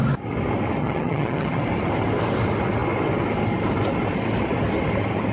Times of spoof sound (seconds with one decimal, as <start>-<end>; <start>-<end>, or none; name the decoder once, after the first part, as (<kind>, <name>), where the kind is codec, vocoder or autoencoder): 0.8-1.6 (vocoder, HiFi-GAN)